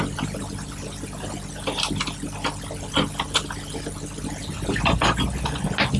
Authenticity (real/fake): real